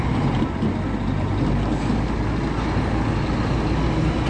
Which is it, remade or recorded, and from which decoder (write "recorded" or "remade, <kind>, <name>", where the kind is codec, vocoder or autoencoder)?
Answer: recorded